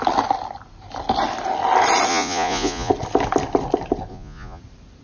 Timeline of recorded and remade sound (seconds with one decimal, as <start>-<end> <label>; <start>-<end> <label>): 0.0-2.1 recorded; 2.1-2.9 remade; 2.9-4.1 recorded; 4.1-4.6 remade; 4.6-5.0 recorded